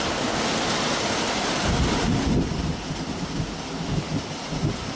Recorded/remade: recorded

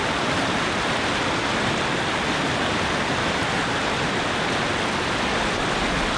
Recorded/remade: recorded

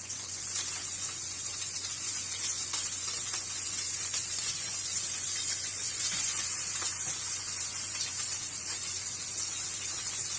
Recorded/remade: remade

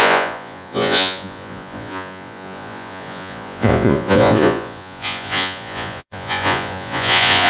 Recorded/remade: remade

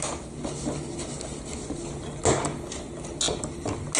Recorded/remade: recorded